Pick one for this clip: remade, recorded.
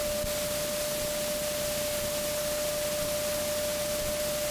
recorded